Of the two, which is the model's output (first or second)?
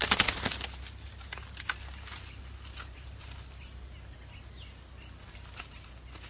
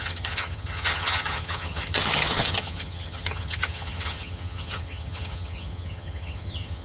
second